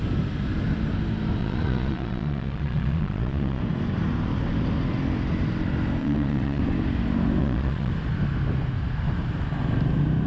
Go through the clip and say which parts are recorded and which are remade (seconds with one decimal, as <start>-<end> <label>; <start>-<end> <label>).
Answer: 0.0-1.4 recorded; 1.4-3.6 remade; 3.6-6.0 recorded; 6.0-6.6 remade; 6.6-7.4 recorded; 7.4-7.9 remade; 7.9-10.3 recorded